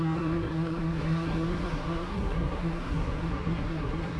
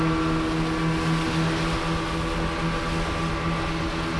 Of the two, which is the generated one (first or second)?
first